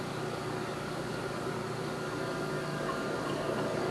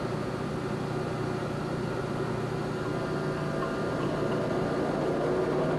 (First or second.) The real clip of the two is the second